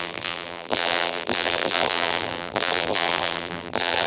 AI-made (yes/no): yes